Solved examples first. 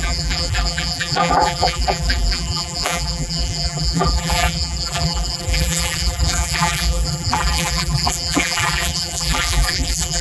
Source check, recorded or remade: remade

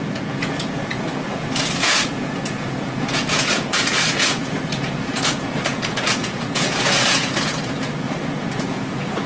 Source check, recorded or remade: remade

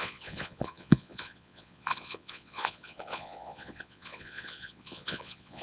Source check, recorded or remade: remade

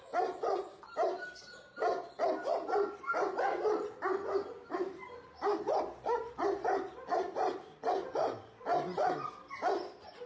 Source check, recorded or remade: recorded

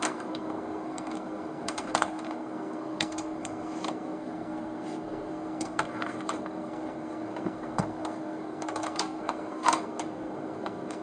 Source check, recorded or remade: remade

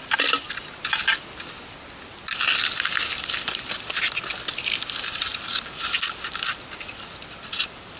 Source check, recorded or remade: recorded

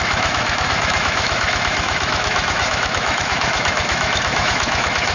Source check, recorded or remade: remade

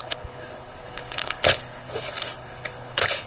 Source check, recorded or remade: remade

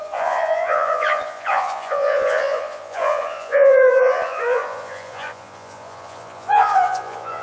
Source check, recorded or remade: remade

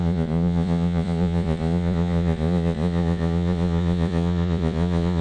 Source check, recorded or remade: remade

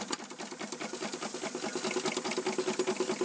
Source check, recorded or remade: recorded